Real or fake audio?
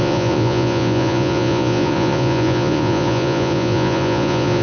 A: fake